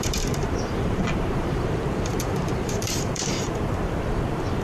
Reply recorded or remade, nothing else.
remade